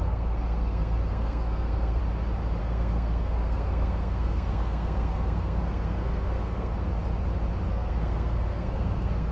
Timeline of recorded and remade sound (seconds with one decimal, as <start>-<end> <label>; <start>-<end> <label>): 0.0-2.0 remade; 2.0-2.6 recorded; 2.6-6.9 remade; 6.9-7.7 recorded; 7.7-9.3 remade